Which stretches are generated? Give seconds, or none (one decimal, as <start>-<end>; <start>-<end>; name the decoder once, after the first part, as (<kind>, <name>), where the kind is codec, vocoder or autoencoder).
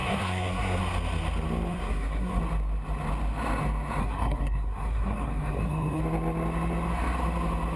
0.0-0.8 (codec, SNAC); 1.7-2.4; 4.0-6.0